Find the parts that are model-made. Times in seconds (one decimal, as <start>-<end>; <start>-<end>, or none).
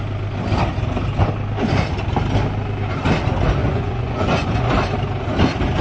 3.6-4.7